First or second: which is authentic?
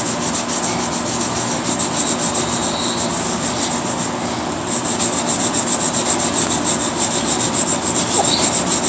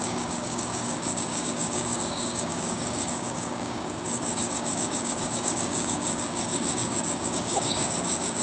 first